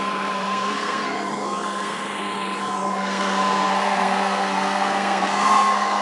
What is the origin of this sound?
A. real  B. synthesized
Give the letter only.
B